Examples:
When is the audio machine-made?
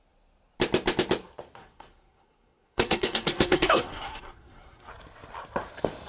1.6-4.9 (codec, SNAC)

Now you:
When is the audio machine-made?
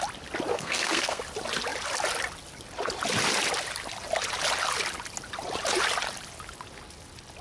0.5-1.2 (codec, SNAC)